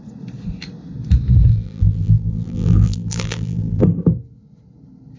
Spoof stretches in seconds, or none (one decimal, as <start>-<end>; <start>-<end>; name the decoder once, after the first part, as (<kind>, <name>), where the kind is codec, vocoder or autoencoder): 1.5-3.8 (vocoder, BigVGAN v2)

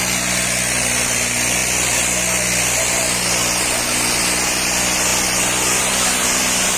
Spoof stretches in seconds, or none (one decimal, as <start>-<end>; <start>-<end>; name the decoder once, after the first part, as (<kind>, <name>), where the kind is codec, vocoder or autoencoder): none

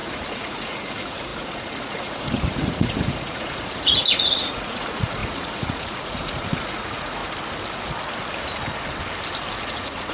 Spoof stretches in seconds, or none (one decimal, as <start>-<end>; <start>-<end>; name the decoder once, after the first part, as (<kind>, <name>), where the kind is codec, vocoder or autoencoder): 0.0-7.2 (vocoder, Vocos); 9.5-10.1

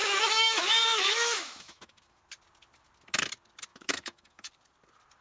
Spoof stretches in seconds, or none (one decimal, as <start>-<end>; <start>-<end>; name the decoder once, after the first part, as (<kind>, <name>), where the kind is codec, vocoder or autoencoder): 0.0-2.2 (autoencoder, DAC-VAE); 3.7-4.5

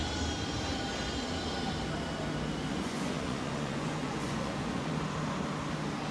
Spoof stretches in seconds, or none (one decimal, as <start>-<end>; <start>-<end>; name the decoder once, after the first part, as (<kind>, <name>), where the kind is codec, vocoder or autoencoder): 2.7-4.9 (vocoder, Vocos)

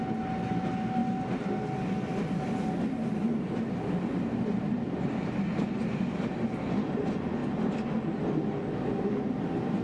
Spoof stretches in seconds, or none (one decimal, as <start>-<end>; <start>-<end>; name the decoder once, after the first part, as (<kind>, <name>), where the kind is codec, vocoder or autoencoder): none

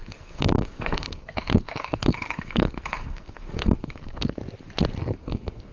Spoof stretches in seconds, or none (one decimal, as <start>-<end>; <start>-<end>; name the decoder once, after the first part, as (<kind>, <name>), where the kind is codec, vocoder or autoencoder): 0.0-4.4 (codec, SNAC); 5.0-5.7